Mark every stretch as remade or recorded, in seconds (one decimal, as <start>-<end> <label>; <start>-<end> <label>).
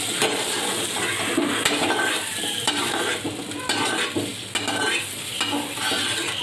0.0-1.8 recorded; 1.8-3.9 remade; 3.9-6.4 recorded